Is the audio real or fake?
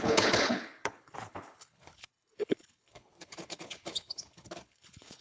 fake